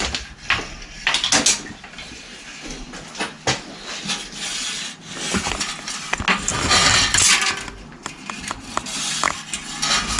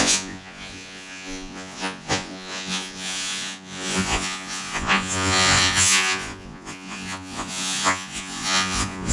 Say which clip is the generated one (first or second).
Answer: second